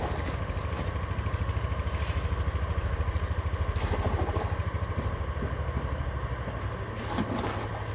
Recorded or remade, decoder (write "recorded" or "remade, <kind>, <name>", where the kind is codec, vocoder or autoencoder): recorded